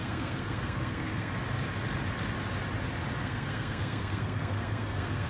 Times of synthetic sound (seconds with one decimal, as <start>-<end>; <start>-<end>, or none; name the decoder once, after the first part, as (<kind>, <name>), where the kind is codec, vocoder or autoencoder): 0.0-1.3 (codec, SNAC); 3.2-5.3